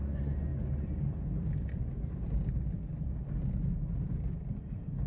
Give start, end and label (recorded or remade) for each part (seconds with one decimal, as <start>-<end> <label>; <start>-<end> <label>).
0.0-5.1 recorded